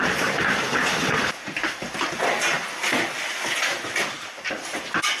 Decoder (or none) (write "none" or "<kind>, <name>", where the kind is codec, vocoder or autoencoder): none